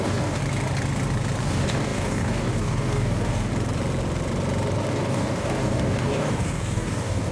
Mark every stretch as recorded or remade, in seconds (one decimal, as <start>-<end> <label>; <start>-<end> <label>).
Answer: 0.0-0.4 remade; 0.4-1.4 recorded; 1.4-3.5 remade; 3.5-4.9 recorded; 4.9-7.3 remade

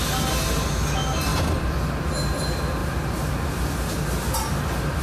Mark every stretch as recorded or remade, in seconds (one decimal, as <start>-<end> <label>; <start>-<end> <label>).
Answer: 0.0-1.3 recorded; 1.3-1.9 remade; 1.9-5.0 recorded

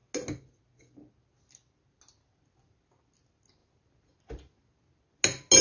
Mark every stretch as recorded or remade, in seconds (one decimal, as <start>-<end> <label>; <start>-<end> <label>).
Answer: 0.0-5.6 recorded

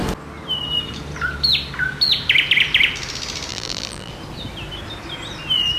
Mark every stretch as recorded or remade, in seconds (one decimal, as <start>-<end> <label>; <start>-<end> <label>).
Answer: 0.0-3.5 recorded; 3.5-4.1 remade; 4.1-5.8 recorded

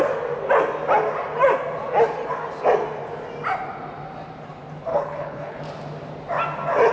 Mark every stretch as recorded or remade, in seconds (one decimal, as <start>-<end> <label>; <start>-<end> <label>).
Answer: 0.0-4.9 recorded; 4.9-5.6 remade; 5.6-6.9 recorded

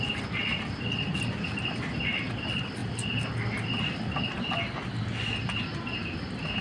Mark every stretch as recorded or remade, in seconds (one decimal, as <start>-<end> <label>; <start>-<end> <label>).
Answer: 0.0-6.6 recorded